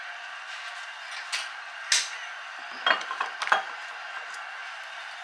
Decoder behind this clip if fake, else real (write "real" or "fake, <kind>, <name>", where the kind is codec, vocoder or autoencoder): real